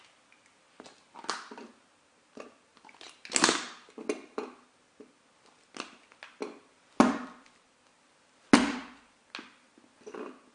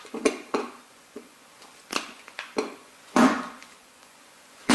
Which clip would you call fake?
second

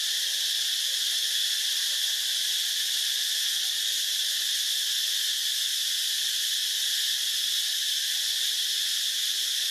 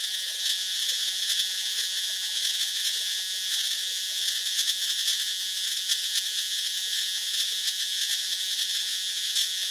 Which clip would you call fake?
second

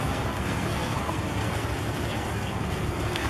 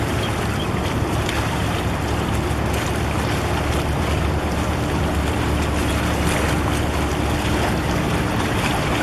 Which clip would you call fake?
first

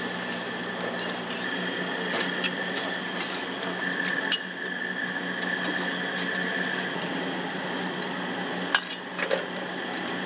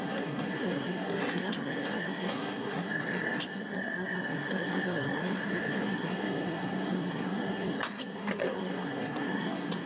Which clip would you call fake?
second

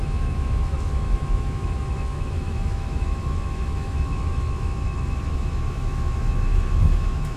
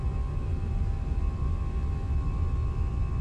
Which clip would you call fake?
first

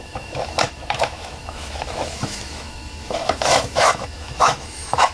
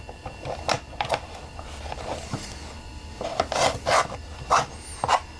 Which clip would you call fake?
first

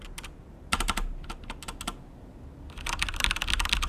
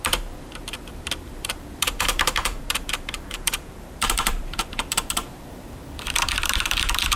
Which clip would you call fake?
second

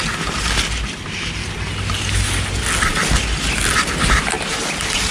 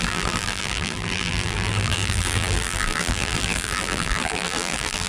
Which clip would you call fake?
second